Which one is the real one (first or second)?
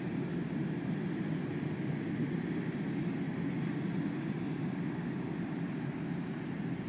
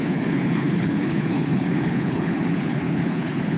first